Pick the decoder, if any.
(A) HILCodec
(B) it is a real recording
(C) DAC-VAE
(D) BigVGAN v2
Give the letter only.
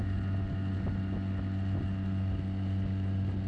B